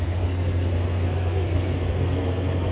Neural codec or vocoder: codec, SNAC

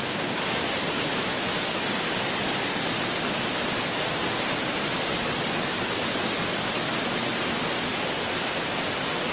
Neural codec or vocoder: none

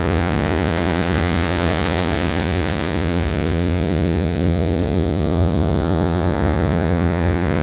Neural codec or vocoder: vocoder, Vocos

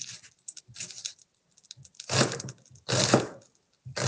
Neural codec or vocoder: none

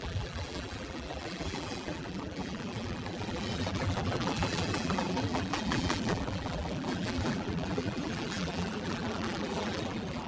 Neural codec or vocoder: vocoder, BigVGAN v2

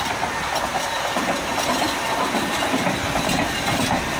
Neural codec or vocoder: none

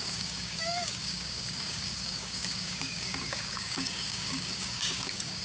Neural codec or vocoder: codec, DAC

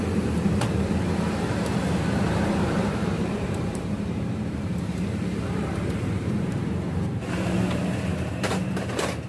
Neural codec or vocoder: vocoder, BigVGAN v2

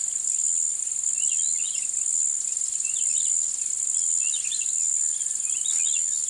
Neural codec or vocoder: none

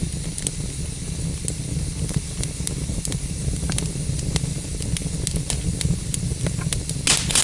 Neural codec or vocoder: none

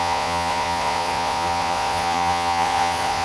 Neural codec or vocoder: vocoder, Vocos